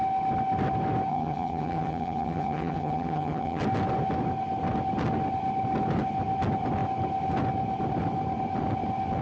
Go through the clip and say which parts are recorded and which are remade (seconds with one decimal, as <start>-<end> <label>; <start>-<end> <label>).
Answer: 0.0-1.1 recorded; 1.1-3.6 remade; 3.6-9.2 recorded